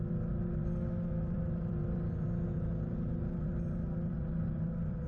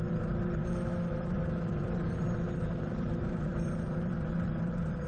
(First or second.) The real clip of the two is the first